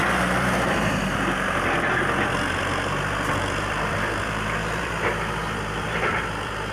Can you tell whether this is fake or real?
fake